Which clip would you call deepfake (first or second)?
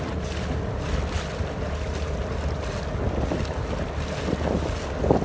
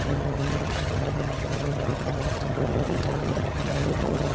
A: second